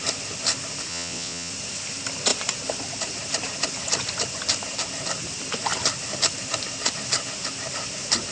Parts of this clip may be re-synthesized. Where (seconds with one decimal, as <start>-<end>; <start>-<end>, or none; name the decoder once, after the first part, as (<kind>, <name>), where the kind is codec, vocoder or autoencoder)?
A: 0.9-1.5 (vocoder, WaveNeXt)

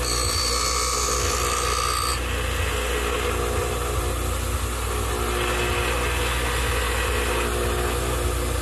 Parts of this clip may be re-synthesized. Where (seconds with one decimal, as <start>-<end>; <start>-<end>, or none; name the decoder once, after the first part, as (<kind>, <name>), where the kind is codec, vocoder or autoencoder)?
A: none